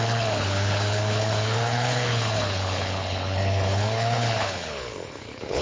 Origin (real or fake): fake